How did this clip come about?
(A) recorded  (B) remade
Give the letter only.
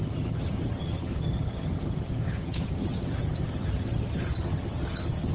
B